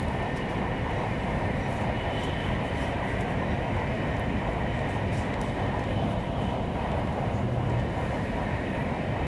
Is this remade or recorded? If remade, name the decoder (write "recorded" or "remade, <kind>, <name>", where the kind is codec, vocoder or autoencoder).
remade, vocoder, BigVGAN v2